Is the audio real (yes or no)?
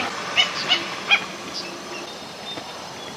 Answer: yes